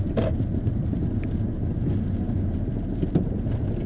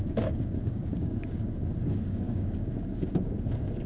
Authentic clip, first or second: first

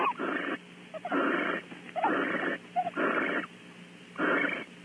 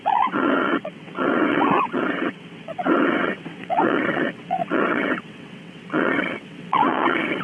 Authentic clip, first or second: first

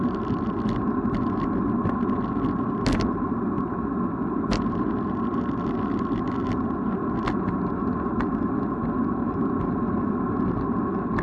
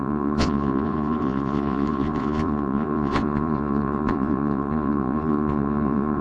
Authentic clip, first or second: first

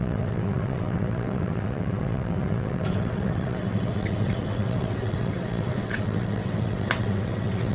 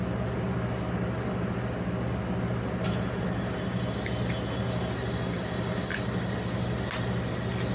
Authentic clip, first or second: second